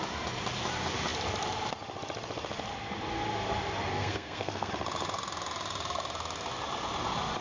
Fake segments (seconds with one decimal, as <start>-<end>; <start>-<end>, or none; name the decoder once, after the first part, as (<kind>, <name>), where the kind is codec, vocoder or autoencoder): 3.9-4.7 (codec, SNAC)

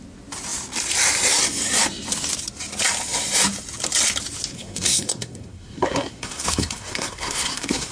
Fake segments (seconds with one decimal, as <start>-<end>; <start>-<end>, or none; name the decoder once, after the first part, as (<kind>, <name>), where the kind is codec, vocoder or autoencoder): 4.5-7.9 (codec, SNAC)

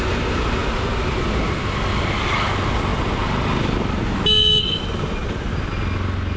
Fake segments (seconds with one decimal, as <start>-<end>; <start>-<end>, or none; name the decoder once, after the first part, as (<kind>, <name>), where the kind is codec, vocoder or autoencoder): none